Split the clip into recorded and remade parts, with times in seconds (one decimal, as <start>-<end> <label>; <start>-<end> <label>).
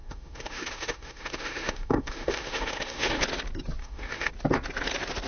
0.0-3.2 remade; 3.2-3.8 recorded; 3.8-4.3 remade; 4.3-5.3 recorded